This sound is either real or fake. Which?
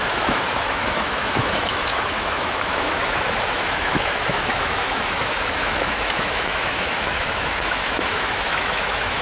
fake